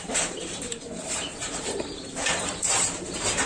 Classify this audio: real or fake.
fake